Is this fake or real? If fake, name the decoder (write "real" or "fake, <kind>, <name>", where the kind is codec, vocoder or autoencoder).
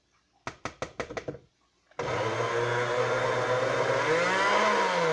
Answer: real